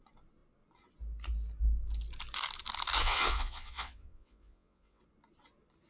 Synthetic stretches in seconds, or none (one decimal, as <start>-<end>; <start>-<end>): 3.0-5.0